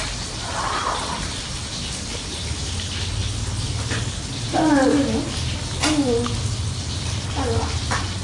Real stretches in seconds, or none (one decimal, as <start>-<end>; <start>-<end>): 0.0-8.2